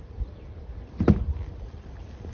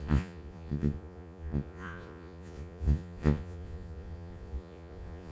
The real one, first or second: first